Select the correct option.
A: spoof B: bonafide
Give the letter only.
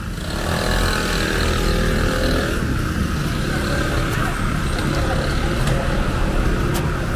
B